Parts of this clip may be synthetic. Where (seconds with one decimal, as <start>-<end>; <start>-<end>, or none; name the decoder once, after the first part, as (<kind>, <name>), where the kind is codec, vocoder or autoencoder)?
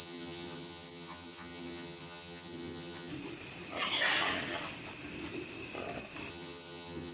0.0-3.1 (vocoder, HiFi-GAN); 6.3-7.1